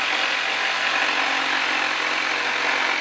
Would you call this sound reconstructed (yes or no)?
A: no